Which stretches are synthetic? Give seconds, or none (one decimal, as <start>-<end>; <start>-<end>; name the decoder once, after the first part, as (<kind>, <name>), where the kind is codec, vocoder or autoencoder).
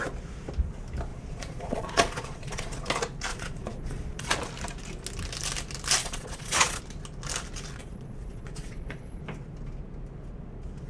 1.1-2.9 (vocoder, Vocos); 3.3-4.3; 6.0-6.8; 7.8-9.2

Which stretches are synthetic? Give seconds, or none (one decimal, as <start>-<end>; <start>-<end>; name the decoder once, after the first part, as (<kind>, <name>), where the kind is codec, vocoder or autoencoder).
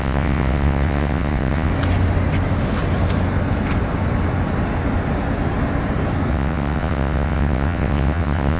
0.0-1.7 (vocoder, WaveNeXt); 6.3-8.6